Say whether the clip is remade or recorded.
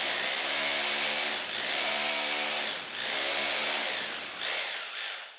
recorded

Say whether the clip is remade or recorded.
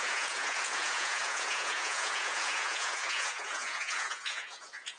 remade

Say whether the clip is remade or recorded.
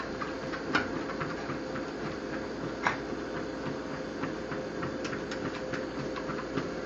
recorded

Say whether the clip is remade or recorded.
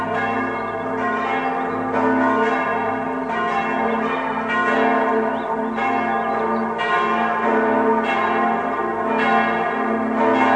recorded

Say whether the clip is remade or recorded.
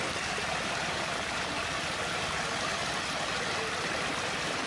recorded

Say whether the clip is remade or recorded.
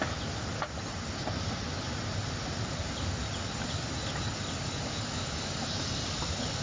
recorded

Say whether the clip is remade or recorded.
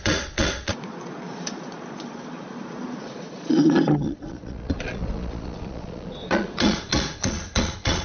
remade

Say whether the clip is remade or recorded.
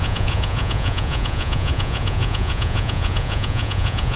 remade